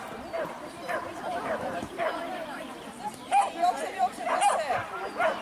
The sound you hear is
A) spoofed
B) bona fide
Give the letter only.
A